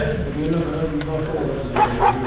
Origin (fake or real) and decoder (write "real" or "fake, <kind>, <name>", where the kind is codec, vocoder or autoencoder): fake, autoencoder, DAC-VAE